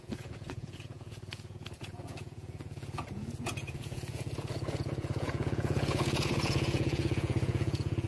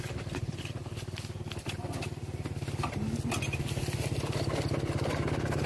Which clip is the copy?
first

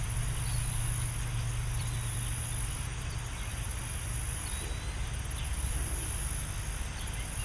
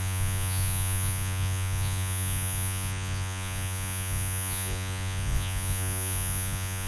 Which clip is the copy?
second